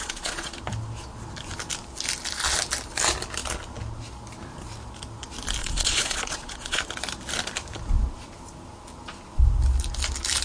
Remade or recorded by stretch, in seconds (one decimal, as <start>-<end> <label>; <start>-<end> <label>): 0.0-0.6 remade; 0.6-5.6 recorded; 5.6-6.8 remade; 6.8-10.4 recorded